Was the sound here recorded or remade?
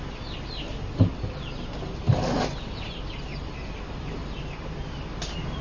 recorded